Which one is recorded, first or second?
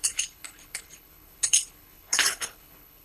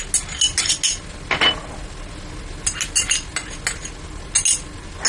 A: second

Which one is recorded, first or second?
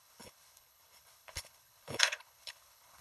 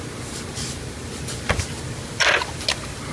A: second